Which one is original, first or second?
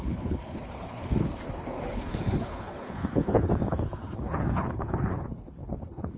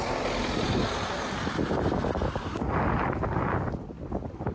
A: second